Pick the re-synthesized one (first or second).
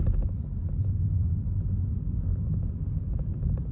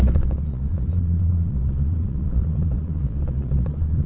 second